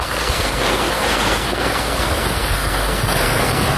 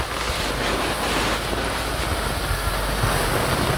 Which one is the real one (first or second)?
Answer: second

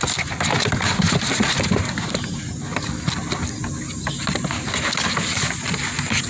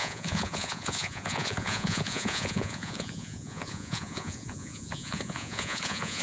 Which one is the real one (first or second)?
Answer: first